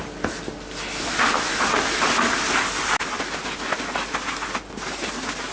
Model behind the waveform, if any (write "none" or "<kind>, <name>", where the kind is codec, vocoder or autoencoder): none